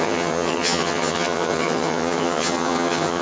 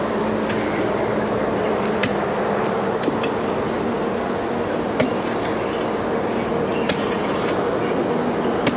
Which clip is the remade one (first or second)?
first